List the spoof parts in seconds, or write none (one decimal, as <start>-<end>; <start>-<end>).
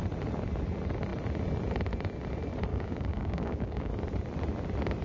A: 2.7-3.9